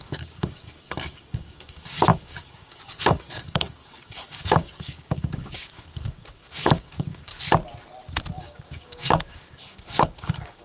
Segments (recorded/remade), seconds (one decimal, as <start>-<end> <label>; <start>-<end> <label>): 0.0-7.3 remade; 7.3-8.4 recorded; 8.4-10.6 remade